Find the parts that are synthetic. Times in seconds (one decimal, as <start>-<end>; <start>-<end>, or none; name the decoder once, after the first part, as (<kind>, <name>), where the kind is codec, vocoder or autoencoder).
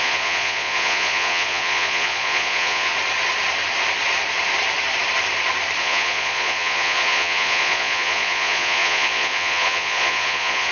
0.0-2.9 (vocoder, Vocos); 5.8-10.7